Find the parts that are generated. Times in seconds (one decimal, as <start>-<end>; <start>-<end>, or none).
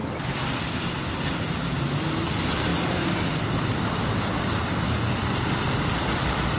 none